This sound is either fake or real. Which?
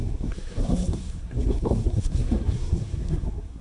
fake